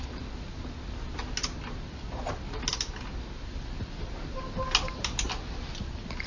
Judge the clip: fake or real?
real